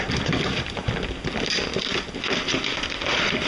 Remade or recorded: remade